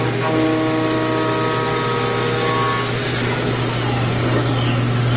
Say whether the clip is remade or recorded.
recorded